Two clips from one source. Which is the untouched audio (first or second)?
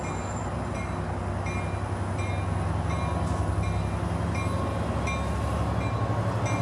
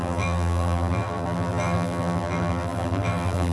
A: first